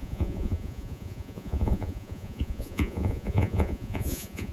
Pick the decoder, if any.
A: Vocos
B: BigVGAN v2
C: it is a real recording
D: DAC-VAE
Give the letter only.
A